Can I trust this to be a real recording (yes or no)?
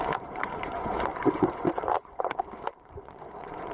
no